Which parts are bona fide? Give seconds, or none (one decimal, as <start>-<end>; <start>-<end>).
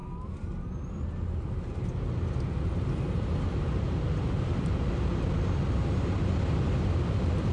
0.0-7.5